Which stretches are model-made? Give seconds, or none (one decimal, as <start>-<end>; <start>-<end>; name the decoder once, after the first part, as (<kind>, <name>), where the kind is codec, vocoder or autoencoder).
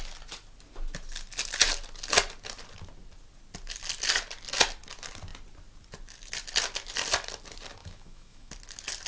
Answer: 7.8-8.5 (autoencoder, DAC-VAE)